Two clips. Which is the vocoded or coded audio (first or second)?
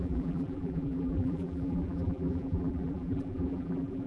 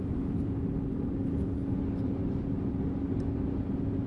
first